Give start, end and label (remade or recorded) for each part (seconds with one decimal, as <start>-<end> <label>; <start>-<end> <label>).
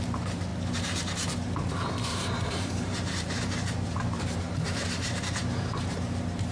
0.0-2.1 recorded; 2.1-5.8 remade; 5.8-6.5 recorded